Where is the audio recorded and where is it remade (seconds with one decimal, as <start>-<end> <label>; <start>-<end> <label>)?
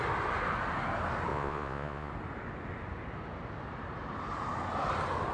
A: 0.0-1.3 recorded; 1.3-2.1 remade; 2.1-5.3 recorded